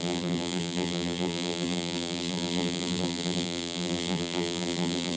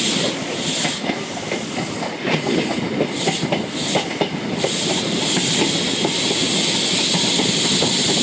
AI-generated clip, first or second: first